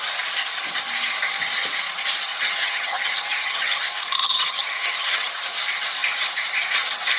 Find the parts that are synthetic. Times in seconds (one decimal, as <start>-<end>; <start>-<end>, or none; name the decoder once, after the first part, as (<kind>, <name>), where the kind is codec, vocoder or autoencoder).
2.3-3.8 (vocoder, HiFi-GAN); 4.2-5.3

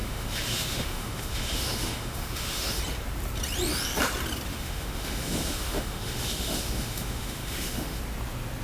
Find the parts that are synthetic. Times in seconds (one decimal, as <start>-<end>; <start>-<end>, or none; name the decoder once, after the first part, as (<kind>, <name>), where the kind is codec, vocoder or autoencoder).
0.0-2.8 (autoencoder, DAC-VAE); 4.5-8.0